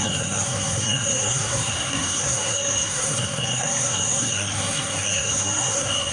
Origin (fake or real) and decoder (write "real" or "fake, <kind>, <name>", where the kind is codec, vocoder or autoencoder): fake, codec, SNAC